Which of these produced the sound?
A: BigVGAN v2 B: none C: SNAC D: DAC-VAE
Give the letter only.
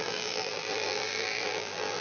A